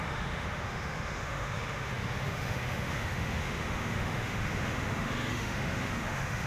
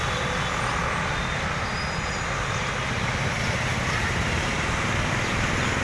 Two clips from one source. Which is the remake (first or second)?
first